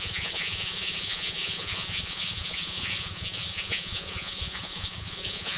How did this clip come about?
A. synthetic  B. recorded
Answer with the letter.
A